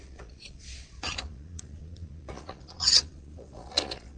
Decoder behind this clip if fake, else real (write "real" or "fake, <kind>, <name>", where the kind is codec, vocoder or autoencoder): fake, vocoder, Vocos